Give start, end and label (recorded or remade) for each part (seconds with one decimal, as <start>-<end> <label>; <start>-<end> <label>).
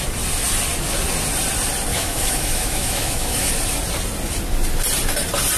0.0-1.9 recorded; 1.9-3.5 remade; 3.5-5.6 recorded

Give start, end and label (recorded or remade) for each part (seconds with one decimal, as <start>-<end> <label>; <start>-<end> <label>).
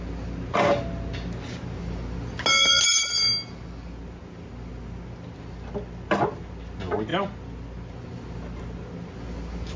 0.0-9.8 recorded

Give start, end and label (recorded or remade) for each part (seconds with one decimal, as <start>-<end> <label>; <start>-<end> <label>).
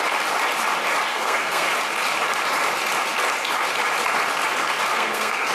0.0-1.1 recorded; 1.1-1.7 remade; 1.7-4.9 recorded; 4.9-5.5 remade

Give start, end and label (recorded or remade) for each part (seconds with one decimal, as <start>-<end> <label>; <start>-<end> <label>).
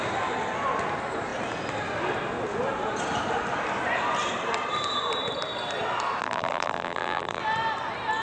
0.0-6.2 recorded; 6.2-7.4 remade; 7.4-8.2 recorded